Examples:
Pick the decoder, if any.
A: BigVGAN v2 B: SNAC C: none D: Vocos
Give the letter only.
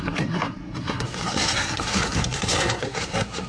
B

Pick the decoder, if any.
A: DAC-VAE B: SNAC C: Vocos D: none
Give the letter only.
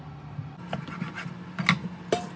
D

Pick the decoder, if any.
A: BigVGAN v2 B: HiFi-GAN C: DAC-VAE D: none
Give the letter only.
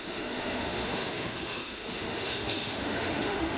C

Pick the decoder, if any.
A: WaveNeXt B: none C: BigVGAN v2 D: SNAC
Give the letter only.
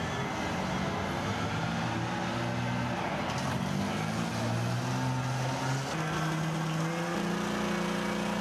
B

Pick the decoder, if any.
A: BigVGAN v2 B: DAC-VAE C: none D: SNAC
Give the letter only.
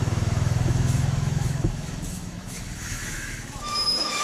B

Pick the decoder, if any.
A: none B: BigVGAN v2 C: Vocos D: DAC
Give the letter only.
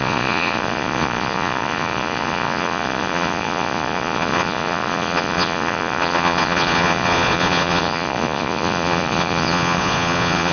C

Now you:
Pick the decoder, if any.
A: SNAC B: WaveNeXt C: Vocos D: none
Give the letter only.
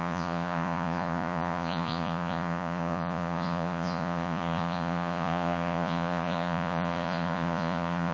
C